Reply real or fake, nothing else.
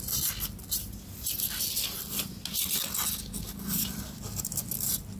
real